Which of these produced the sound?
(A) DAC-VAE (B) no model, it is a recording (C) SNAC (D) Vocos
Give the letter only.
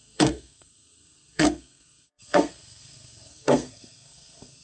C